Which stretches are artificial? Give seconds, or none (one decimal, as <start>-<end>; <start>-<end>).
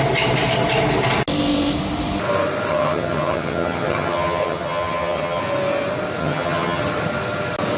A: 2.7-5.4; 6.2-6.8